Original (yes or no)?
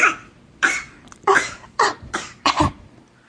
no